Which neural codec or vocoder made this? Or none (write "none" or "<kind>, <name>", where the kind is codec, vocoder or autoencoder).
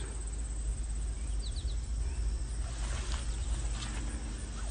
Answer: none